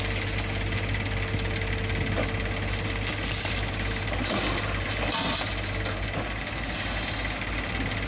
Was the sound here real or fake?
real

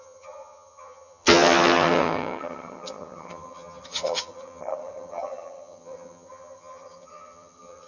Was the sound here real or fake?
fake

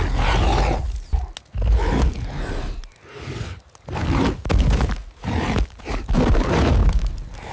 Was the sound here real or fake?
real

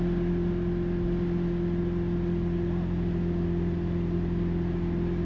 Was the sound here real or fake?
real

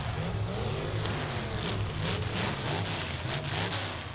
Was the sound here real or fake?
real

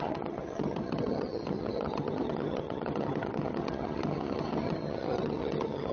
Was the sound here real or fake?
fake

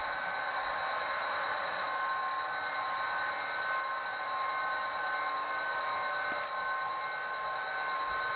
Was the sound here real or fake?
real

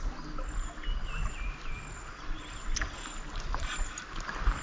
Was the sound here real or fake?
real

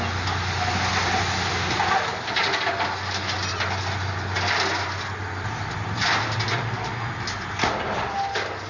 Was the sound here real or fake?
real